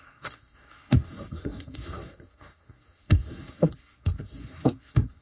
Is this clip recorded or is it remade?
remade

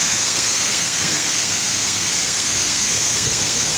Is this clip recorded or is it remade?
remade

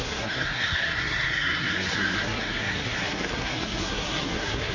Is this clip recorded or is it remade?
remade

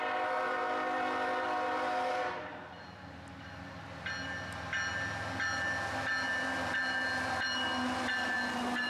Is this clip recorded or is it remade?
recorded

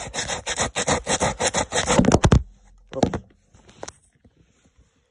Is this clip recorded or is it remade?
recorded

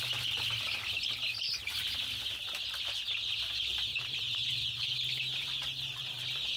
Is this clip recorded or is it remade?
recorded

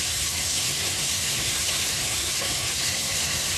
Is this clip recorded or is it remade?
remade